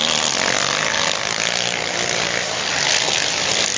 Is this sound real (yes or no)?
yes